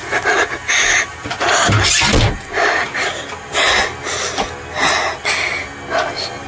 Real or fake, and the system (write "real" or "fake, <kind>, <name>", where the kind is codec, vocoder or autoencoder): real